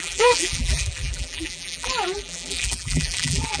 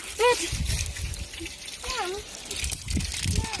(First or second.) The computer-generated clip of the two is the first